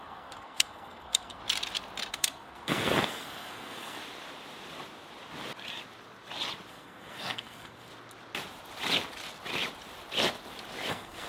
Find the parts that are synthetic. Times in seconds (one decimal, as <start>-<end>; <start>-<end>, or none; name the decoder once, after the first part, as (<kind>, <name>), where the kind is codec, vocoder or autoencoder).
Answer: 0.0-1.4 (codec, SNAC); 2.1-4.0; 6.7-7.9; 10.9-11.3

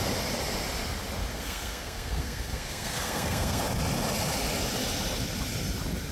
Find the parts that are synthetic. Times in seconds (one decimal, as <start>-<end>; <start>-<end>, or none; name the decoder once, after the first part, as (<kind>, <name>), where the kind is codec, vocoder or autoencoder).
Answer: 1.3-3.6 (codec, SNAC)

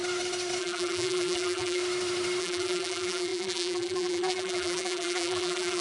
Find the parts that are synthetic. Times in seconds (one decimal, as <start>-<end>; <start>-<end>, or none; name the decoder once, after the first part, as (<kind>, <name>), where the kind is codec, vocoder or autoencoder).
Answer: 0.6-1.8 (vocoder, BigVGAN v2); 2.4-5.8

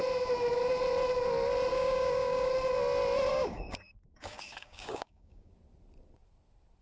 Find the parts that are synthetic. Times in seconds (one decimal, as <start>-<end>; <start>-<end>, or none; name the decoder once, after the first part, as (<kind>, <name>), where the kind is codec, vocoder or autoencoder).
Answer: 1.7-2.5 (codec, DAC); 3.3-5.5